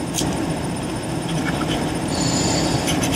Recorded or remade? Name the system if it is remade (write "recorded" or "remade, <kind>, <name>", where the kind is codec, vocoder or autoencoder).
remade, vocoder, BigVGAN v2